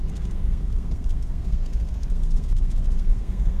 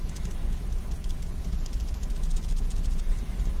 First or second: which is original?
second